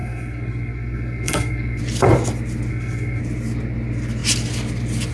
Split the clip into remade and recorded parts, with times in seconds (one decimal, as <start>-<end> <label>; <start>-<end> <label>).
0.0-1.8 remade; 1.8-2.7 recorded; 2.7-3.2 remade; 3.2-5.1 recorded